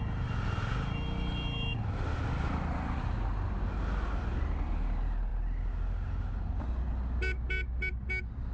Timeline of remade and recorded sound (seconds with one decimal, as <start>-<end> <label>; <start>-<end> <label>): 0.0-8.5 recorded